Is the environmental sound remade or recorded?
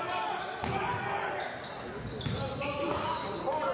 recorded